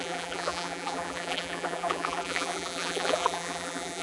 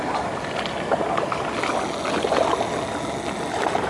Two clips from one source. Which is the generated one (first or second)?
first